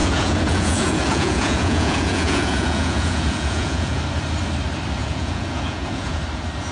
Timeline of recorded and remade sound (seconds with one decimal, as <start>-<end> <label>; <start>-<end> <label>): 0.0-4.0 remade; 4.0-5.0 recorded; 5.0-6.2 remade; 6.2-6.7 recorded